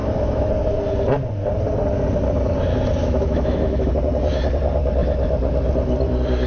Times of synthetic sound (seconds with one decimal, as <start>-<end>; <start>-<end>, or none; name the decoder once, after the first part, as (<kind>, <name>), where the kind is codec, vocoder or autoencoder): 0.0-0.5 (autoencoder, DAC-VAE); 3.0-3.9